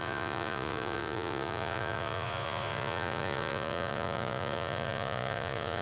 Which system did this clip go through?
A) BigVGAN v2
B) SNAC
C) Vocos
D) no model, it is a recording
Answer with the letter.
C